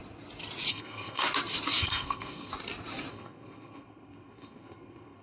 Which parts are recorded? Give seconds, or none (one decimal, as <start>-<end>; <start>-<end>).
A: 0.0-0.7; 1.2-1.8; 2.5-3.1